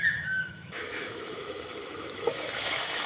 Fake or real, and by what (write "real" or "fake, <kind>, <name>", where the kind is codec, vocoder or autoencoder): fake, autoencoder, DAC-VAE